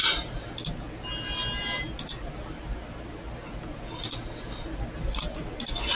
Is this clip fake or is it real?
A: real